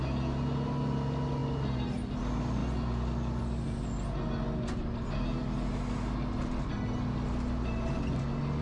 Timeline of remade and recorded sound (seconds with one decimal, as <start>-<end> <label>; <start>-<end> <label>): 0.0-1.4 recorded; 1.4-2.2 remade; 2.2-8.6 recorded

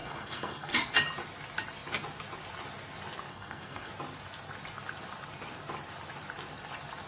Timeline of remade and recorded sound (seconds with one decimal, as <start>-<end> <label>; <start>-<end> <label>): 0.0-0.9 remade; 0.9-3.3 recorded; 3.3-3.9 remade; 3.9-7.1 recorded

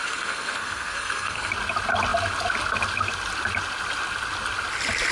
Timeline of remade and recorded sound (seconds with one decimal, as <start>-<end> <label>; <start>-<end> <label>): 0.0-1.5 remade; 1.5-5.1 recorded

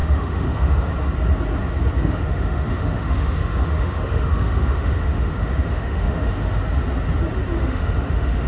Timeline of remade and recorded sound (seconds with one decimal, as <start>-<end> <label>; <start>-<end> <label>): 0.0-0.9 remade; 0.9-2.0 recorded; 2.0-6.6 remade; 6.6-7.6 recorded; 7.6-8.5 remade

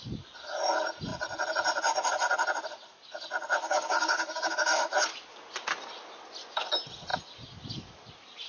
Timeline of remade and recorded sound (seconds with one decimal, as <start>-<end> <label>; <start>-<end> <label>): 0.0-3.6 recorded; 3.6-4.9 remade; 4.9-8.5 recorded

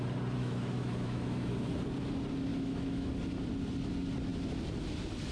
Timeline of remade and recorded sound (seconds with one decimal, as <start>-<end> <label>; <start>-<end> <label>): 0.0-0.4 recorded; 0.4-1.5 remade; 1.5-2.5 recorded; 2.5-3.1 remade; 3.1-5.3 recorded